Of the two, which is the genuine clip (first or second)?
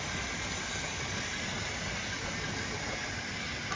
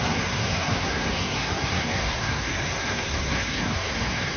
first